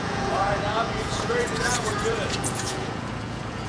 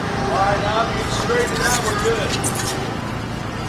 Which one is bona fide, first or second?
second